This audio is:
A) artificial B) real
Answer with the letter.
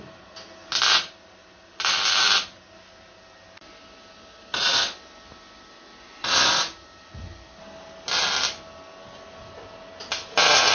B